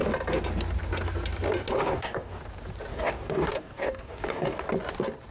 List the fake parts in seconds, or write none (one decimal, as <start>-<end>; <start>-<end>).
1.8-2.4; 2.9-4.6